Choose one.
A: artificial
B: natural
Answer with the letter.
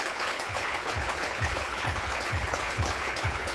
A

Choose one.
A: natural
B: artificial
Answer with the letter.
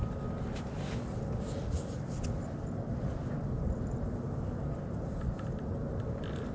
A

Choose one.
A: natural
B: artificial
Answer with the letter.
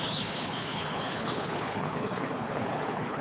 B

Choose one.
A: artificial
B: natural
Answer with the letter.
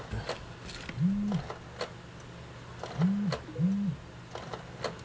B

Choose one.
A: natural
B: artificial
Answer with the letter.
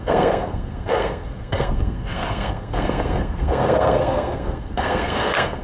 B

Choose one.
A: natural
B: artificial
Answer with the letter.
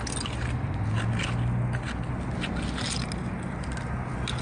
A